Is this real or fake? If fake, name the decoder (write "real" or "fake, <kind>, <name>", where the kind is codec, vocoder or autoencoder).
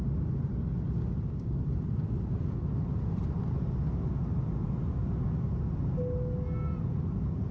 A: real